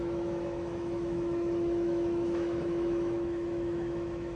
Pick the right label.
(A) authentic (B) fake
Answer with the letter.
B